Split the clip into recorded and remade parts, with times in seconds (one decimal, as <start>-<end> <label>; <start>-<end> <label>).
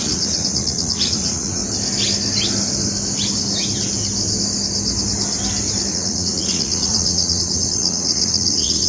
0.0-1.6 remade; 1.6-5.9 recorded; 5.9-8.9 remade